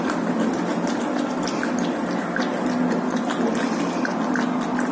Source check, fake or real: real